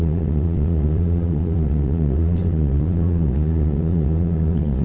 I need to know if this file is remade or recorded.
remade